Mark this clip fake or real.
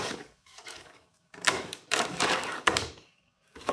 fake